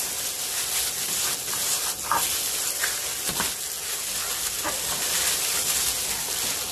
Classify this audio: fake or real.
real